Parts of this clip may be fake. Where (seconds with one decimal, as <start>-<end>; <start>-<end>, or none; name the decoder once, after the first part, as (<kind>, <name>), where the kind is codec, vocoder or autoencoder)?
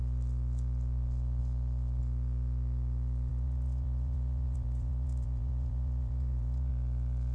3.3-6.7 (vocoder, Vocos)